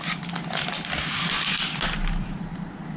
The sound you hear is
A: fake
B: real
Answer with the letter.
B